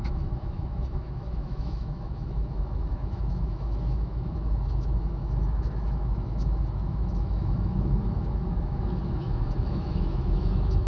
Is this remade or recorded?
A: remade